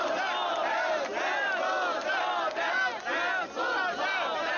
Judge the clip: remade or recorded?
recorded